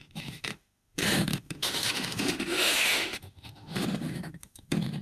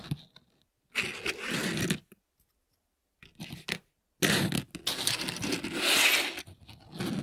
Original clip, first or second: second